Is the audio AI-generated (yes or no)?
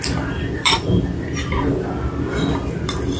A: yes